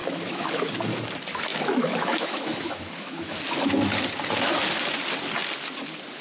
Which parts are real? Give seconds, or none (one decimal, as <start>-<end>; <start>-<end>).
0.7-1.5; 3.4-6.2